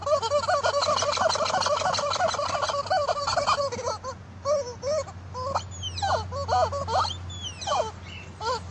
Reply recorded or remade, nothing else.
recorded